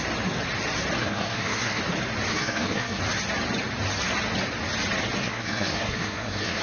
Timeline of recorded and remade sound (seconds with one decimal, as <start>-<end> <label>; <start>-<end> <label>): 0.0-1.0 recorded; 1.0-1.8 remade; 1.8-2.3 recorded; 2.3-3.0 remade; 3.0-5.2 recorded; 5.2-6.6 remade